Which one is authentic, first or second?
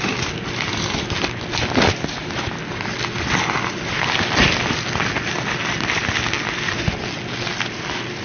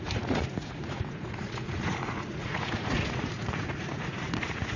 first